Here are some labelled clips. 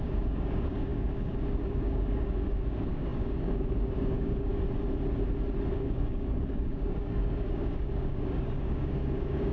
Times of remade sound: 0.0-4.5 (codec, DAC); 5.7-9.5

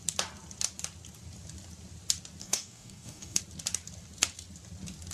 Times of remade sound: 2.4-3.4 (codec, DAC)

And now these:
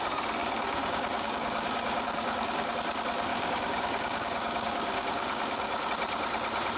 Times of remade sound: 0.4-2.7 (codec, DAC); 3.3-5.9

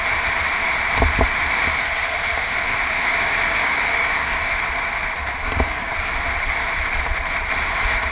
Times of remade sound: 2.7-4.5 (codec, DAC); 5.4-6.1

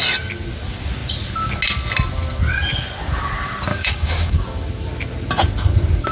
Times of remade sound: 3.7-4.7 (codec, DAC)